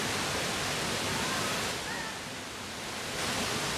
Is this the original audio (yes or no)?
yes